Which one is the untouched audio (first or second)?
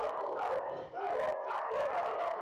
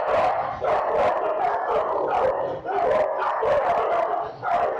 second